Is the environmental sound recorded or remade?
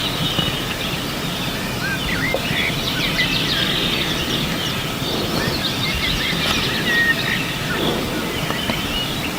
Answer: recorded